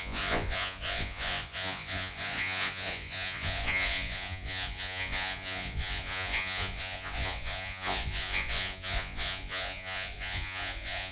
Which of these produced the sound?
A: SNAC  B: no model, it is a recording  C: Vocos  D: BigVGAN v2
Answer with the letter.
C